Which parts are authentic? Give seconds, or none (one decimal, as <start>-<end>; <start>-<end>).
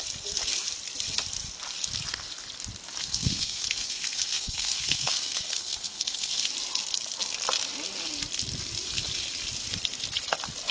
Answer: 0.0-3.0; 6.5-10.7